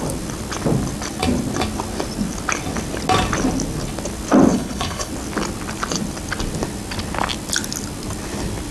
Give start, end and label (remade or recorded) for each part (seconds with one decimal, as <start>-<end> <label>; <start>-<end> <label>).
0.0-4.5 recorded; 4.5-5.1 remade; 5.1-8.7 recorded